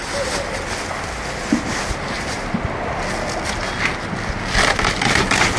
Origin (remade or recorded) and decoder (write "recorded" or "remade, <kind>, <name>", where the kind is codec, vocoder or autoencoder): recorded